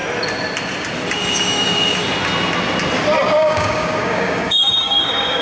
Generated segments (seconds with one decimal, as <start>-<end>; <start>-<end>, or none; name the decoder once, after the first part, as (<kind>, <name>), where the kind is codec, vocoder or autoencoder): 1.1-2.0 (codec, DAC); 3.4-5.4